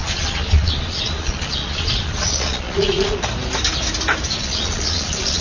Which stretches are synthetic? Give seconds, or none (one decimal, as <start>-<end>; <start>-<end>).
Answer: 0.0-3.2; 4.4-5.4